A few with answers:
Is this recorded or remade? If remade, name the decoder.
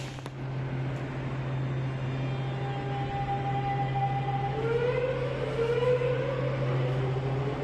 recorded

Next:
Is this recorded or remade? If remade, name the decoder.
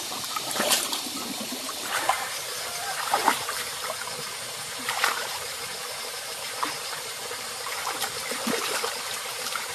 remade, vocoder, BigVGAN v2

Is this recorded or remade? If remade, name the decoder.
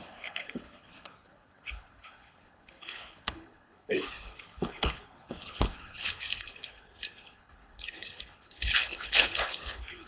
remade, codec, HILCodec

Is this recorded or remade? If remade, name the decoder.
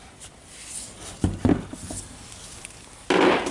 recorded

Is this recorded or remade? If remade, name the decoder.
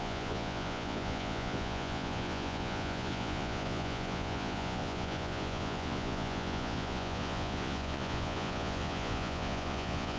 remade, vocoder, Vocos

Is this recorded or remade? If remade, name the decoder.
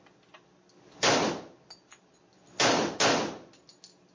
recorded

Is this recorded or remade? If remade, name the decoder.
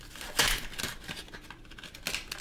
recorded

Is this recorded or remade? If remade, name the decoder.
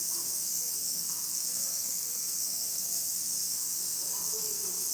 remade, codec, SNAC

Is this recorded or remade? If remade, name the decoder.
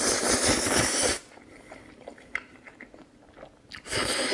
recorded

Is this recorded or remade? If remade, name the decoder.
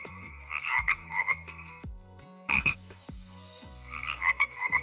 remade, codec, SNAC